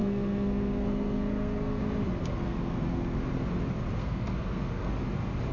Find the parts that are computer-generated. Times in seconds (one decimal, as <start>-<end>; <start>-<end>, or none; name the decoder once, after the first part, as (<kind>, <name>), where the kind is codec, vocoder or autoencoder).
0.0-1.8 (codec, SNAC); 2.2-3.2; 4.0-4.9

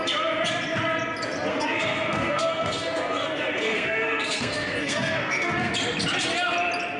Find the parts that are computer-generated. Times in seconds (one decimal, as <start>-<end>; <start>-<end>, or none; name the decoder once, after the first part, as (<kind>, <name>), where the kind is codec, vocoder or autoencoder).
1.5-5.7 (codec, SNAC)

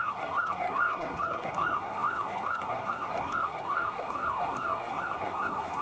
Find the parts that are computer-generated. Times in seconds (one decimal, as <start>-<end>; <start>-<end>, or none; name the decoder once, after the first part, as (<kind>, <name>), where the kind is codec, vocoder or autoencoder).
0.0-5.8 (codec, SNAC)